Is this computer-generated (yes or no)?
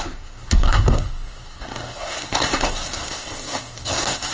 yes